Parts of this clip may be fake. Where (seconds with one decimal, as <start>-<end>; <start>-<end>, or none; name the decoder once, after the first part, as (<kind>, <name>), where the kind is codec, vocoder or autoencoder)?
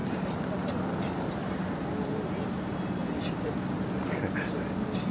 none